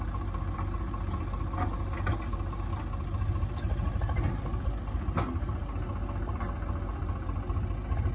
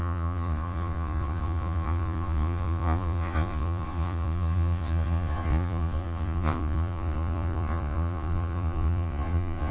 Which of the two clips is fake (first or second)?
second